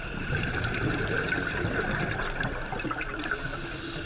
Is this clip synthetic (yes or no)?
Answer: no